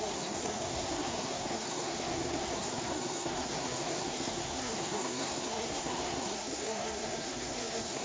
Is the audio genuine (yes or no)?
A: no